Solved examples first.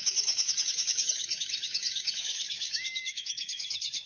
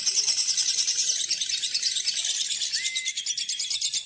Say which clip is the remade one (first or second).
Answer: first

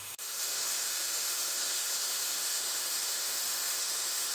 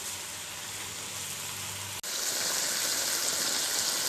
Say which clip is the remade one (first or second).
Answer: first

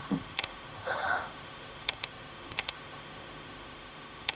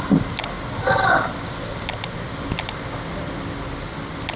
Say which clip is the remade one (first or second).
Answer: first